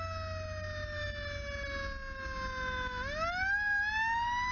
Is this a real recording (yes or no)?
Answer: yes